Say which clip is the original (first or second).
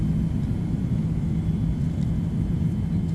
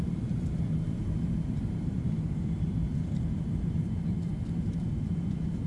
first